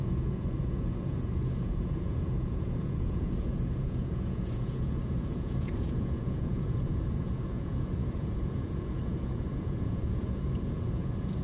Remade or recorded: remade